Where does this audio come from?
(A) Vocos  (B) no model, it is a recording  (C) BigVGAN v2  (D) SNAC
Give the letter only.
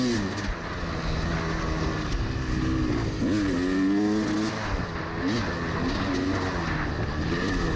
B